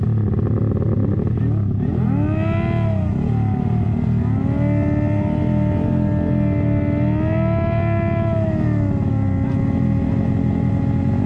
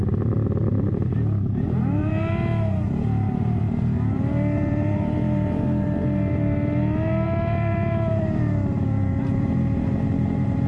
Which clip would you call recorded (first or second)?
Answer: first